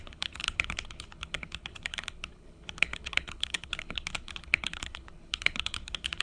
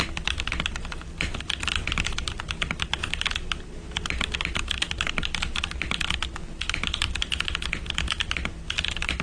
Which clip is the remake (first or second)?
first